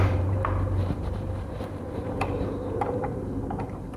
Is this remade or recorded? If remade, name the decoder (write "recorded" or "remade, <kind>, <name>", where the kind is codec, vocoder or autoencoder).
remade, vocoder, BigVGAN v2